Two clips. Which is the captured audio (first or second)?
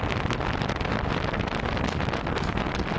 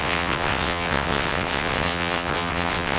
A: first